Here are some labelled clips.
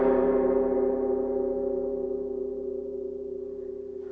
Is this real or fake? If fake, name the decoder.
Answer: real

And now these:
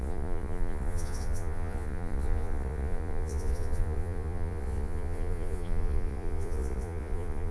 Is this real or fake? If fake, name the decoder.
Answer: fake, vocoder, Vocos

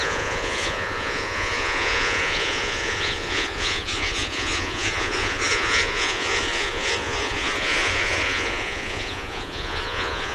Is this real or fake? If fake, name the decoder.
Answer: fake, vocoder, Vocos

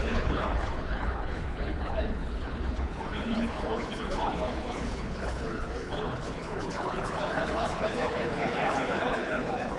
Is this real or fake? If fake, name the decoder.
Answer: fake, codec, HILCodec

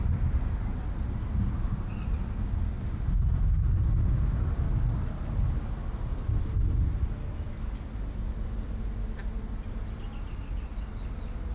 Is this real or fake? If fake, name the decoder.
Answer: real